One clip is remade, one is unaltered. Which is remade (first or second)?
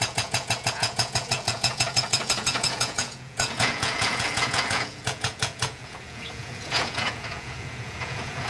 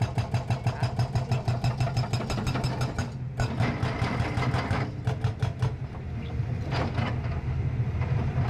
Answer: first